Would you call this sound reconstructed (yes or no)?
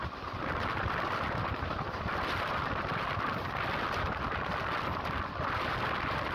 no